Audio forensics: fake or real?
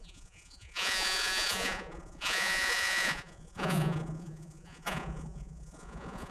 fake